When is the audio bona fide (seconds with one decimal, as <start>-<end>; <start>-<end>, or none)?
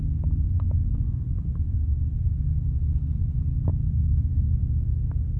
0.0-3.7; 4.6-5.4